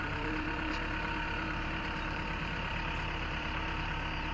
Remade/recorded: remade